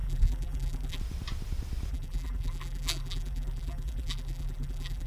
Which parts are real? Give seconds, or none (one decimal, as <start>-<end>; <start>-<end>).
1.0-1.9